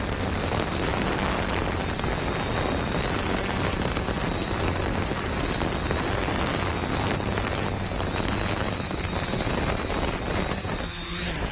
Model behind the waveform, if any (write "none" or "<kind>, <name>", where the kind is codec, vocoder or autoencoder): none